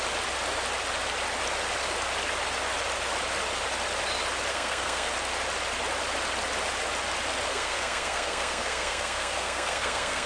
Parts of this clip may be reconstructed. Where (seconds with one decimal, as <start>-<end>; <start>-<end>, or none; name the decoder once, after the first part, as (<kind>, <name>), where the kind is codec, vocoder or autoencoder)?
4.5-5.1 (codec, SNAC); 7.5-10.3